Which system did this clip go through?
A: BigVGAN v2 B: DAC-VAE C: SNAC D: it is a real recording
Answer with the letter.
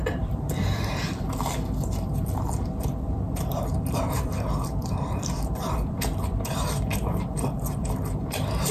A